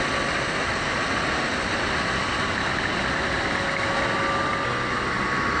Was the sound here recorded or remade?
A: recorded